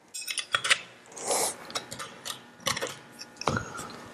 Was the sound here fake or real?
real